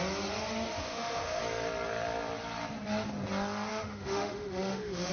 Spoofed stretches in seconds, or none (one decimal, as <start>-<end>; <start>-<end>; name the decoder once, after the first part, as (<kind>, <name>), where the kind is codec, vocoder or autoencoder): 0.7-1.4 (autoencoder, DAC-VAE); 3.7-5.1